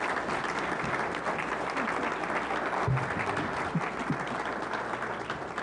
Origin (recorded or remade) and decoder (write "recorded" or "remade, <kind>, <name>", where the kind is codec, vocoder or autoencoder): recorded